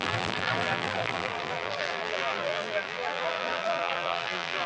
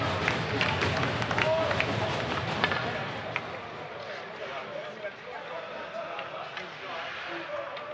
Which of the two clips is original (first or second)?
second